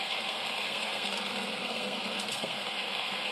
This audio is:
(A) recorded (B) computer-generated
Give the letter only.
B